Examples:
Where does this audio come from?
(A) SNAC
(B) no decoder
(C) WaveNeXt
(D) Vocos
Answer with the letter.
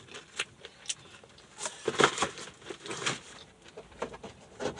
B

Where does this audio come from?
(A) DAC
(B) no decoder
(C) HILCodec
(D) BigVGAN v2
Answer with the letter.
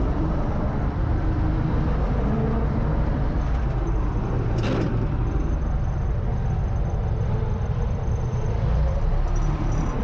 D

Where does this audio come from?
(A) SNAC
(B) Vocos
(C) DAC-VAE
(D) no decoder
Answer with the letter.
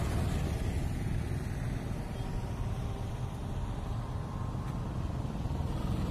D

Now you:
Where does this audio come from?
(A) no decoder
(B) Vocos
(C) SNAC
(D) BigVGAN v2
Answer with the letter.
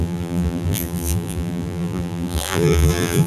D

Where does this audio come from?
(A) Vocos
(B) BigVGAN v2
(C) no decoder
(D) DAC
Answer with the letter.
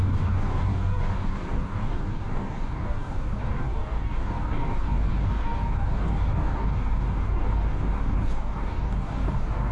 D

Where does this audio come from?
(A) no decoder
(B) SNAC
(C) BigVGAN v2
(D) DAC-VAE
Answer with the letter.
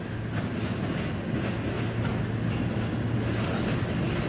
A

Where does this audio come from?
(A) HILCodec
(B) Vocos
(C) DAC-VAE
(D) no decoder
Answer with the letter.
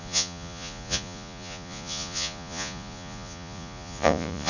B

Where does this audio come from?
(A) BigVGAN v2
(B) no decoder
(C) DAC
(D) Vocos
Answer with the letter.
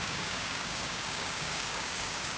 C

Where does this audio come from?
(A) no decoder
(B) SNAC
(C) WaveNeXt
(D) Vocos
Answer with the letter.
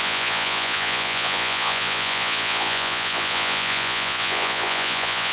D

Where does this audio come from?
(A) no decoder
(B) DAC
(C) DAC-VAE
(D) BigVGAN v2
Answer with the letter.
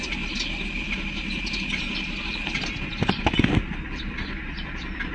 A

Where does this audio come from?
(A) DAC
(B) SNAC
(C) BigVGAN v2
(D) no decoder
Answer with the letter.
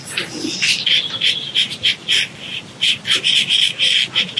D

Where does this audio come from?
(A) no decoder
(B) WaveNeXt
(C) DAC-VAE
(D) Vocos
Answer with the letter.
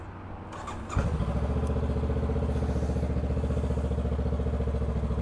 A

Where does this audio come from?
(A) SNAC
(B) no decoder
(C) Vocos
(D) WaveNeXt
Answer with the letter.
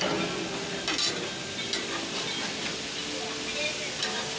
B